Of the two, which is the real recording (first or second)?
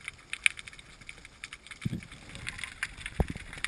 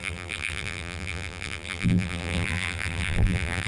first